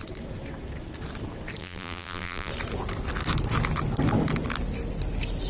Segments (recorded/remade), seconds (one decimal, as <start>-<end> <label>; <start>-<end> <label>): 0.0-1.6 recorded; 1.6-2.5 remade; 2.5-5.5 recorded